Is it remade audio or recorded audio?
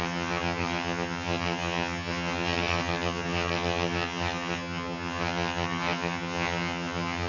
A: remade